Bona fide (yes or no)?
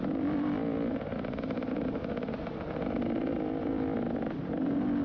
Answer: no